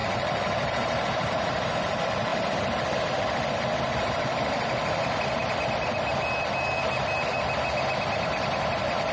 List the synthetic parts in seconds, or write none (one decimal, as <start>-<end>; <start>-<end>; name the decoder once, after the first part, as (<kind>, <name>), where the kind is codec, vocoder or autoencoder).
0.0-1.3 (vocoder, BigVGAN v2)